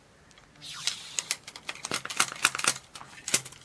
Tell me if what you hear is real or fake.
real